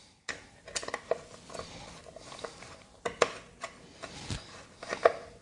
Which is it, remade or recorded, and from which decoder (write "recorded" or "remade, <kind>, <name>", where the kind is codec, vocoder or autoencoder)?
recorded